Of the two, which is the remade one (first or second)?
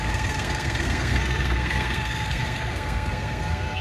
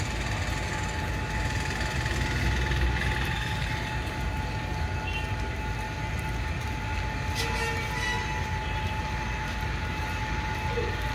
first